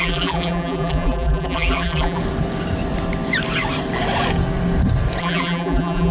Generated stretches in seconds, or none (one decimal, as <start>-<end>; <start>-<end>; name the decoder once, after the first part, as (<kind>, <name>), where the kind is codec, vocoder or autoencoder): 0.0-2.2 (vocoder, BigVGAN v2); 5.2-6.1